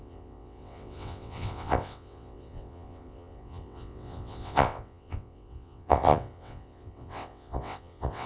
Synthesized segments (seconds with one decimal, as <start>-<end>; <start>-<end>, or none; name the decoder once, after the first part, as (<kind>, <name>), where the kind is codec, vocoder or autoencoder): 0.0-8.3 (vocoder, WaveNeXt)

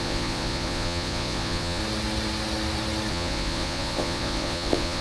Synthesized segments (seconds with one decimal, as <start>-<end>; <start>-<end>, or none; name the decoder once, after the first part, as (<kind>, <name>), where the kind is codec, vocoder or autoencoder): 0.0-1.8 (vocoder, Vocos); 3.1-5.0

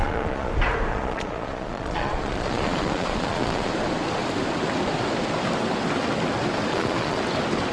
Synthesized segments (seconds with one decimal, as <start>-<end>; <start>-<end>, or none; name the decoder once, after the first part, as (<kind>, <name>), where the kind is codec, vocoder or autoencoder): 0.0-0.5 (vocoder, Vocos); 0.9-3.7; 6.7-7.2

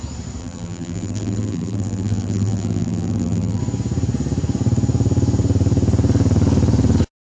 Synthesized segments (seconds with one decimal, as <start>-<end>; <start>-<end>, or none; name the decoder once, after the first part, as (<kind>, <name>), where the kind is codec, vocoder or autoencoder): 0.4-3.6 (vocoder, BigVGAN v2)

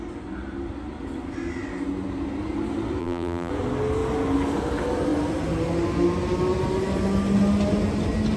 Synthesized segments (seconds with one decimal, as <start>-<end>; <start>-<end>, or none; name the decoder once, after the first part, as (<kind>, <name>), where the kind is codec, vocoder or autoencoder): 3.0-3.5 (vocoder, BigVGAN v2)

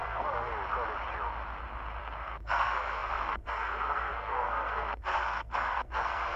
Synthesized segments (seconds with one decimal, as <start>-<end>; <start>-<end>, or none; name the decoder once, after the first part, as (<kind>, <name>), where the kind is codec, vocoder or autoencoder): 0.0-0.5 (codec, SNAC); 2.0-6.4